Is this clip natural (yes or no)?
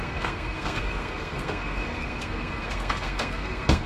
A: no